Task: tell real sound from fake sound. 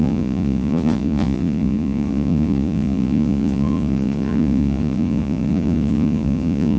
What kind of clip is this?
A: fake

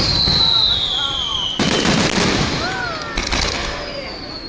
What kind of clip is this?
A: real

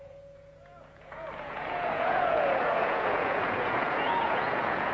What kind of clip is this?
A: fake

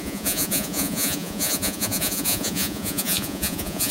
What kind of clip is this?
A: fake